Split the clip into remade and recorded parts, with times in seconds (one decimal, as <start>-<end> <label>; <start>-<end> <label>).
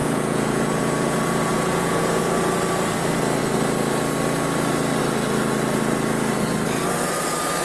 0.0-2.2 remade; 2.2-7.6 recorded